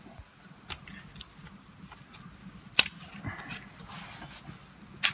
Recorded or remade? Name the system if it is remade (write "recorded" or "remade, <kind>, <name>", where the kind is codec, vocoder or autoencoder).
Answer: recorded